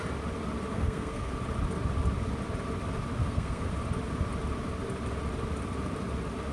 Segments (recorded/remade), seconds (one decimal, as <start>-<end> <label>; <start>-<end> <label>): 0.0-0.7 recorded; 0.7-1.3 remade; 1.3-3.2 recorded; 3.2-3.7 remade; 3.7-6.5 recorded